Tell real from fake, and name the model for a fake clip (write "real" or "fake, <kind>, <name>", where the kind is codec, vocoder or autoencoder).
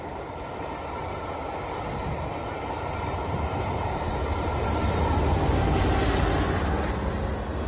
real